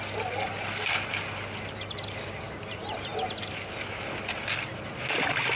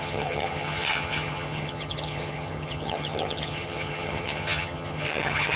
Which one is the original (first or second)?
first